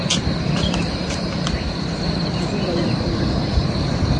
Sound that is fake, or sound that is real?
fake